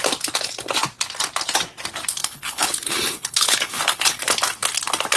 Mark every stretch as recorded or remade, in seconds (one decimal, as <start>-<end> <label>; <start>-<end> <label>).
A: 0.0-2.2 recorded; 2.2-4.2 remade; 4.2-5.2 recorded